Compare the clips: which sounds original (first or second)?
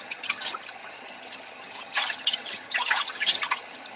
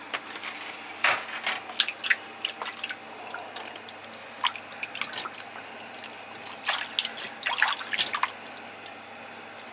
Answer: second